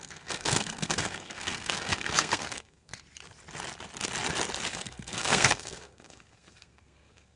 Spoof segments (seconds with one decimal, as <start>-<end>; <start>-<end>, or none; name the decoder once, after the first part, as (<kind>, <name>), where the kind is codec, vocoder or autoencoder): 0.0-2.9 (codec, SNAC); 4.7-7.4